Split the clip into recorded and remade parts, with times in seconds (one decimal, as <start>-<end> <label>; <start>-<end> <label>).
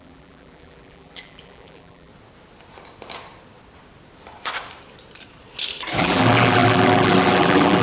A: 0.0-2.1 remade; 2.1-6.0 recorded; 6.0-7.8 remade